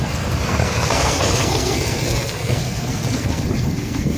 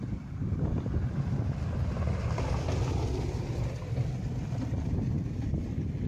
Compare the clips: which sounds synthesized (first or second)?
first